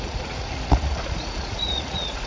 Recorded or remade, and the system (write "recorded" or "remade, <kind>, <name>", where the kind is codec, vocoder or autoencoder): remade, vocoder, Vocos